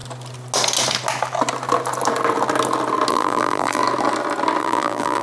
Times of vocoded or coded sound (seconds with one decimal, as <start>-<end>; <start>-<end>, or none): 3.1-3.8; 4.6-5.2